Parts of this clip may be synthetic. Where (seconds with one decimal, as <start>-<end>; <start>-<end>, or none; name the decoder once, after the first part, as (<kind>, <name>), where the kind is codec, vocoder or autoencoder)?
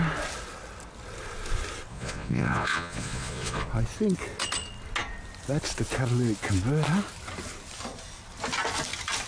1.9-3.7 (vocoder, Vocos)